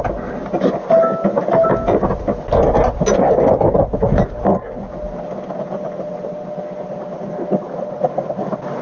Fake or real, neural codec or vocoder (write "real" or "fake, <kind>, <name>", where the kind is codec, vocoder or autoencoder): real